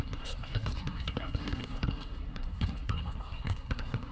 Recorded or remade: remade